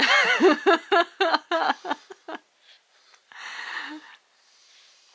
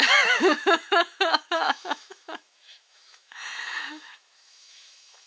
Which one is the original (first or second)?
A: first